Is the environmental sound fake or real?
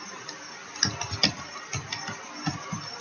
real